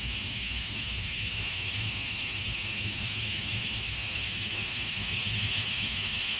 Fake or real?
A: fake